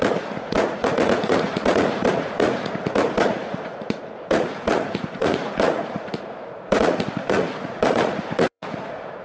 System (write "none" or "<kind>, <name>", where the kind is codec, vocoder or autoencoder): vocoder, Vocos